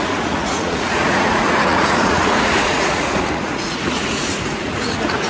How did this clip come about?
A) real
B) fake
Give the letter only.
B